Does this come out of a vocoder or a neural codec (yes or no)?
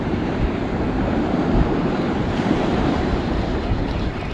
yes